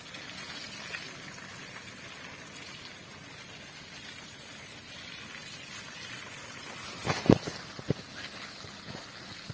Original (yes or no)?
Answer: yes